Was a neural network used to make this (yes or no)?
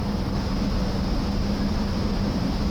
no